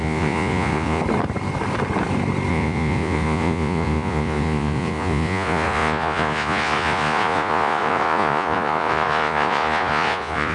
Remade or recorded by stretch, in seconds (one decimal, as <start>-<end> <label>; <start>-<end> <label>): 0.0-1.0 remade; 1.0-2.5 recorded; 2.5-10.5 remade